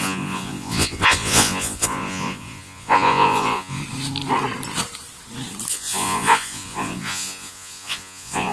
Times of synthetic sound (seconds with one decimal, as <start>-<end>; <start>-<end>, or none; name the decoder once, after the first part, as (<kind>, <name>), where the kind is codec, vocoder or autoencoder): 0.0-3.8 (vocoder, Vocos); 5.7-8.5